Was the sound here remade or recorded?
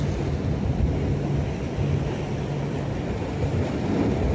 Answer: recorded